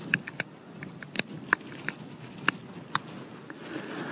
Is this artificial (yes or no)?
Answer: no